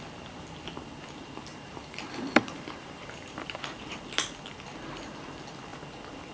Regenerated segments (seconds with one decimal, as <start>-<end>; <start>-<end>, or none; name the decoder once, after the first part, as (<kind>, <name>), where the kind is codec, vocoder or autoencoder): 1.5-3.6 (vocoder, BigVGAN v2)